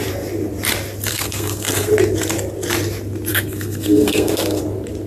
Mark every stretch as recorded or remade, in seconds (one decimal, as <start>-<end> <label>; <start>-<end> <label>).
0.0-1.1 recorded; 1.1-1.9 remade; 1.9-3.3 recorded; 3.3-4.6 remade; 4.6-5.1 recorded